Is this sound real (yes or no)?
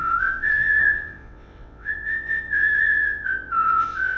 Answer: no